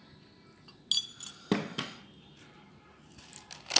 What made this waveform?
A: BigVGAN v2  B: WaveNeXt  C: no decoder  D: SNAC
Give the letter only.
C